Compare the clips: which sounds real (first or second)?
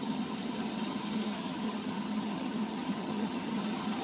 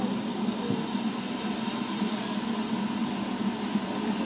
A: second